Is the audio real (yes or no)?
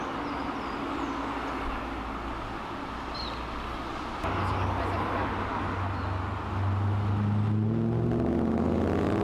yes